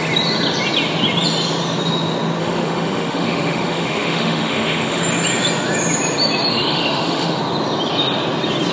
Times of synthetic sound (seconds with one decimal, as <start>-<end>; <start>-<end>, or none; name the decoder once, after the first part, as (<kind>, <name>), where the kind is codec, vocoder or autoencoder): 2.4-5.0 (autoencoder, DAC-VAE); 6.5-7.4